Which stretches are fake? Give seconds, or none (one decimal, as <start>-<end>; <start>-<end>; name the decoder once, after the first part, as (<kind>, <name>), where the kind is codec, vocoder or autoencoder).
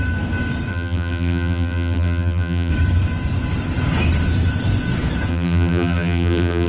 0.7-2.7 (vocoder, BigVGAN v2); 5.3-6.7